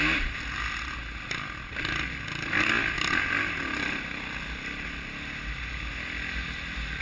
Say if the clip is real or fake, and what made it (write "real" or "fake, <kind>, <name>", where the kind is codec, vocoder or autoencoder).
real